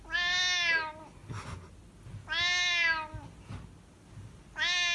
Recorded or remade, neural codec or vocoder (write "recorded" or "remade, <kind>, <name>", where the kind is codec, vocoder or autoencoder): recorded